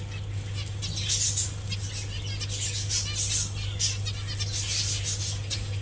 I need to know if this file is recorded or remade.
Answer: recorded